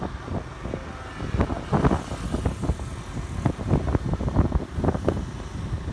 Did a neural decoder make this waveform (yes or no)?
no